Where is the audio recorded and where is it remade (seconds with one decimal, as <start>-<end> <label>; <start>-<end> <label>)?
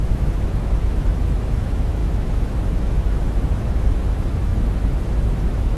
0.0-5.8 remade